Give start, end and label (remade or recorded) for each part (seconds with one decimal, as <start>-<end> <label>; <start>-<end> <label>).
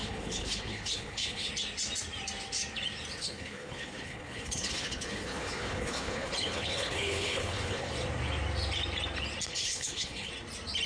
0.0-1.5 remade; 1.5-3.2 recorded; 3.2-7.9 remade; 7.9-9.5 recorded; 9.5-10.3 remade; 10.3-10.9 recorded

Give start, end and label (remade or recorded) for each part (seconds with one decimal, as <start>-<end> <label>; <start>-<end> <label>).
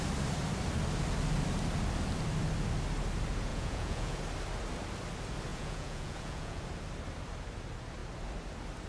0.0-3.5 recorded; 3.5-4.2 remade; 4.2-5.5 recorded; 5.5-6.6 remade; 6.6-8.9 recorded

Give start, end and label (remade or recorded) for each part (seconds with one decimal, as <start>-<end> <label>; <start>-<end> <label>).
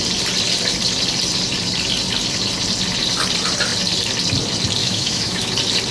0.0-4.8 recorded; 4.8-5.5 remade; 5.5-5.9 recorded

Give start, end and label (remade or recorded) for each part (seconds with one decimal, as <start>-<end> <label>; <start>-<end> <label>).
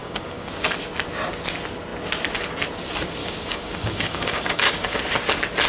0.0-0.5 remade; 0.5-3.2 recorded; 3.2-5.0 remade; 5.0-5.7 recorded